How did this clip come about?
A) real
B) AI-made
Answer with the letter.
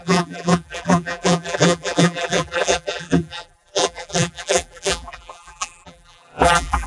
B